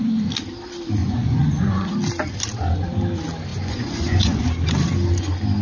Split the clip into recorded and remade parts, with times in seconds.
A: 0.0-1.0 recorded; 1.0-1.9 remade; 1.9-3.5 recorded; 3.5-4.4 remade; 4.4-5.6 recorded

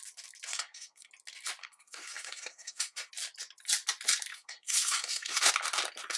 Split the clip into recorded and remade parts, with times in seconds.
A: 0.0-0.5 recorded; 0.5-1.1 remade; 1.1-1.6 recorded; 1.6-3.1 remade; 3.1-4.3 recorded; 4.3-5.5 remade; 5.5-6.2 recorded

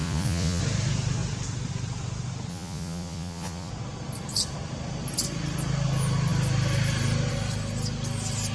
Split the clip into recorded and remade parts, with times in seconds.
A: 0.0-0.6 remade; 0.6-2.5 recorded; 2.5-3.7 remade; 3.7-8.5 recorded